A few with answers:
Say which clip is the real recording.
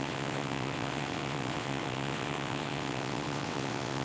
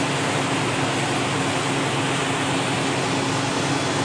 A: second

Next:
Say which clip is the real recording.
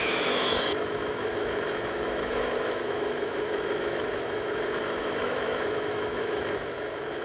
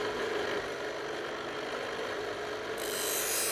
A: second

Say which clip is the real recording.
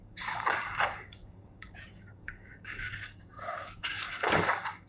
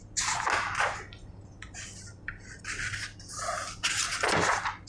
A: second